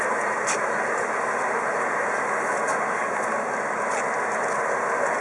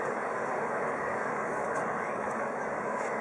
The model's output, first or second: second